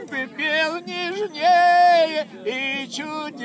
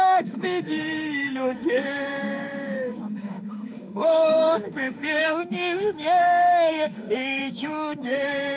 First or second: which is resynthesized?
second